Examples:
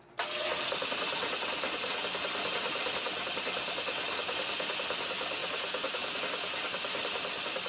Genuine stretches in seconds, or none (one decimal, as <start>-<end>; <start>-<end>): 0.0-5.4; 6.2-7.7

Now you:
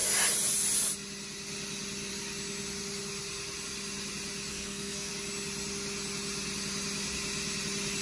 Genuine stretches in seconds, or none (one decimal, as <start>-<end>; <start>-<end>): 0.0-4.5; 5.1-8.0

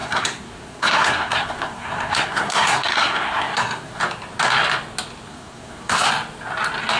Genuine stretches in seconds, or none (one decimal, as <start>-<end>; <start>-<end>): 4.0-5.3; 6.1-7.0

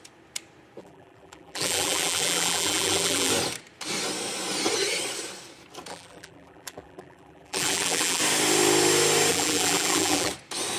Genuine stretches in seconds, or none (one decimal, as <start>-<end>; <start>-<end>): 0.0-0.8; 3.3-5.9; 8.2-9.3; 10.3-10.8

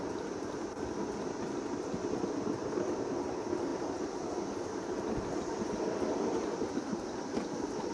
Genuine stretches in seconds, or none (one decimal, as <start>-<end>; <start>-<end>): 0.0-7.9

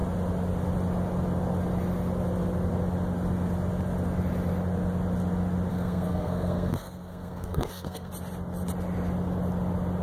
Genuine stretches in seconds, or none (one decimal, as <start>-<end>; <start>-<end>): 0.0-5.7; 8.1-10.0

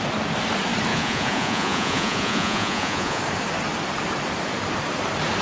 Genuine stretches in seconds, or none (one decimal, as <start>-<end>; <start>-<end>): 0.0-0.9; 3.2-5.4